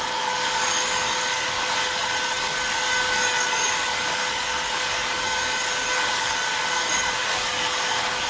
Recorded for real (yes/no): no